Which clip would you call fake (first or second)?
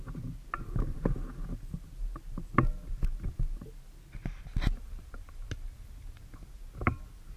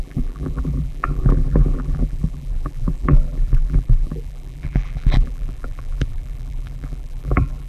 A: second